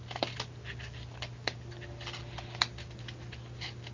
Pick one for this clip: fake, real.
real